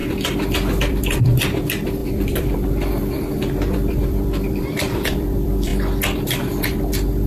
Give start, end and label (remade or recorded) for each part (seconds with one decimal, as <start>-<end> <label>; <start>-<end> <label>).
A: 0.0-0.8 recorded; 0.8-5.7 remade; 5.7-7.3 recorded

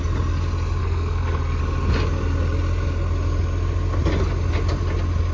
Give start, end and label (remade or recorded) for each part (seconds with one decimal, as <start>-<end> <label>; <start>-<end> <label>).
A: 0.0-0.8 recorded; 0.8-1.6 remade; 1.6-5.3 recorded

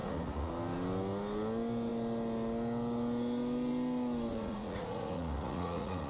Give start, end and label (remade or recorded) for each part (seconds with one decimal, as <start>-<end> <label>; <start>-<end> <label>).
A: 0.0-0.5 remade; 0.5-4.3 recorded; 4.3-6.1 remade

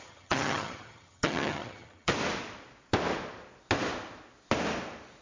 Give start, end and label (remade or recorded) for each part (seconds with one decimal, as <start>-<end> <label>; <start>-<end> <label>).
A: 0.0-2.1 remade; 2.1-5.2 recorded

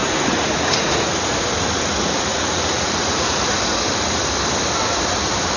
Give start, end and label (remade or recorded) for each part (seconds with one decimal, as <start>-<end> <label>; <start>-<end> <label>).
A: 0.0-1.1 remade; 1.1-2.3 recorded; 2.3-3.4 remade; 3.4-5.6 recorded